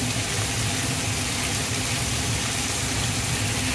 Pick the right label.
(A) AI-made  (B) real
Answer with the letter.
B